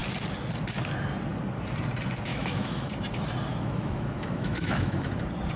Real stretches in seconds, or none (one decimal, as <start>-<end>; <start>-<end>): 0.0-2.3; 2.9-3.5; 5.1-5.6